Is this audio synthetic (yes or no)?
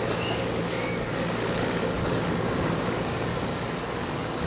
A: yes